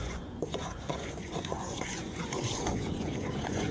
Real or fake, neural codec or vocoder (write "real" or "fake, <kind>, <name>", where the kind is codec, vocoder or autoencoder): fake, vocoder, Vocos